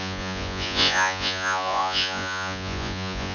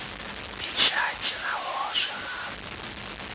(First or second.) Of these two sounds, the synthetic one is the first